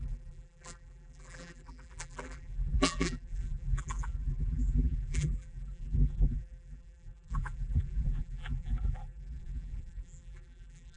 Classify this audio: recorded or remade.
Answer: remade